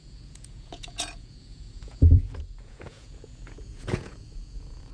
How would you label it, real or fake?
fake